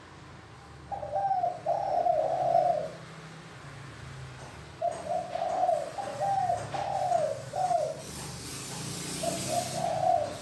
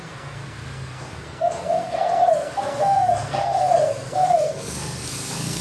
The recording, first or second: first